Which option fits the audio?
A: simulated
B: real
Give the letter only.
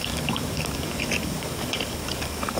A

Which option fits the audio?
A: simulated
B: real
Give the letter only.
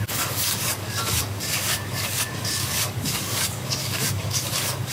A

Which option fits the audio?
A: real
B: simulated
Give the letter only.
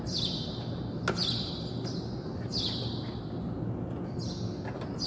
A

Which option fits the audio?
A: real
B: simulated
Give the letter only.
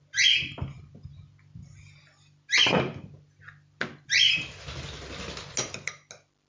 A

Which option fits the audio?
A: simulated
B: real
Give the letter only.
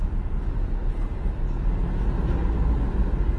B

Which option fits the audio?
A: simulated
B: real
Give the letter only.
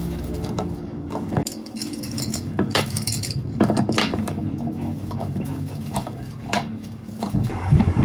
A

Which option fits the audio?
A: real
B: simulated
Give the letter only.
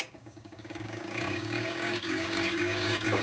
B